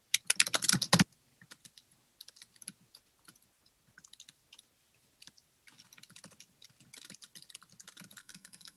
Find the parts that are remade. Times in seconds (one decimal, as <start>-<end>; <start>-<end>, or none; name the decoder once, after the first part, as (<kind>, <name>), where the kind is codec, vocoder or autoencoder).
8.2-8.8 (codec, SNAC)